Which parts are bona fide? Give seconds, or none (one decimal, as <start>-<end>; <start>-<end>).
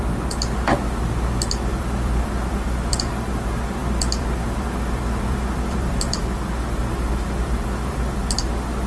0.0-1.7; 3.1-3.8; 8.0-8.9